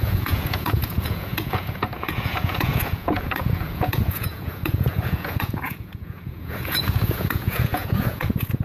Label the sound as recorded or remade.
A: remade